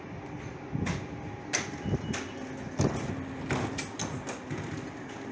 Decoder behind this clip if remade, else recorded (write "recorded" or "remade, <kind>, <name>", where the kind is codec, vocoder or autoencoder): recorded